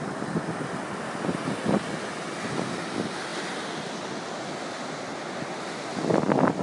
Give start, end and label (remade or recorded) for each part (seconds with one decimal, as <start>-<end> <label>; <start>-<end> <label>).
0.0-6.6 recorded